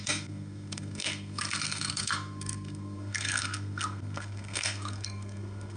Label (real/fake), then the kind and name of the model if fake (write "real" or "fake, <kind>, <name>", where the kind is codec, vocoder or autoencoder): fake, codec, SNAC